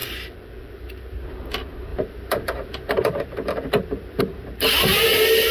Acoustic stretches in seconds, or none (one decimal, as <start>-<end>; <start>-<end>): 0.0-0.7